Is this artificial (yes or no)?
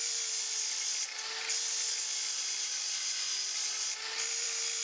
yes